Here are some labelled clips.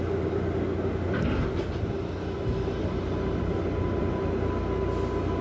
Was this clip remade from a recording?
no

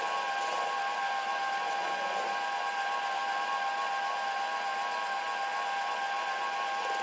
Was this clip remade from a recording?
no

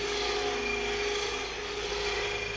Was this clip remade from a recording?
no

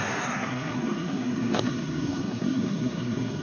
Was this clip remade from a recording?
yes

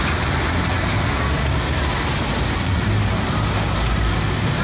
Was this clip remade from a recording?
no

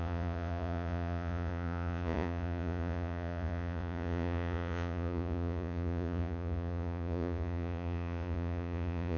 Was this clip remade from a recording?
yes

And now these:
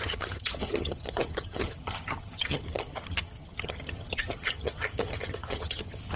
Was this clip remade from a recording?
yes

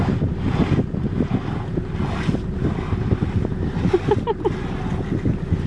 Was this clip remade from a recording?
no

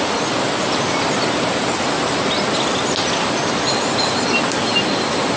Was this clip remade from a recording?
no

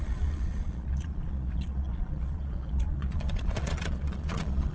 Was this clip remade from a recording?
yes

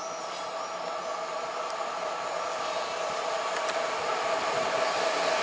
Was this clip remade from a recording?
no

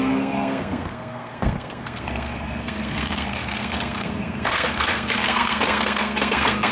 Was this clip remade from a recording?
yes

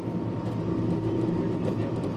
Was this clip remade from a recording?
no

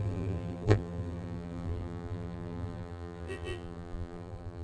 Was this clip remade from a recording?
yes